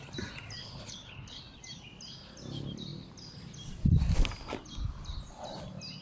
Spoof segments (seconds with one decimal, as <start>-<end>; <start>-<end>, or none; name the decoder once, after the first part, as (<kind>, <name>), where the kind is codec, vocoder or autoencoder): 0.6-1.4 (codec, HILCodec)